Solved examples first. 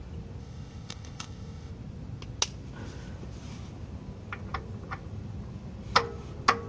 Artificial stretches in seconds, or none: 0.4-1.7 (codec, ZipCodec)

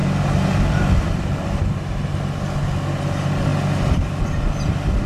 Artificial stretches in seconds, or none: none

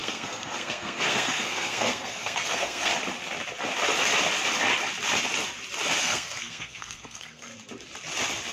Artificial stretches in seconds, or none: 0.0-2.9 (codec, SNAC); 6.0-7.5